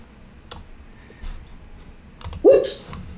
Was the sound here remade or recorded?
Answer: recorded